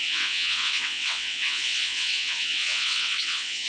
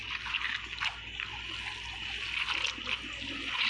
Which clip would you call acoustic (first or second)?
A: second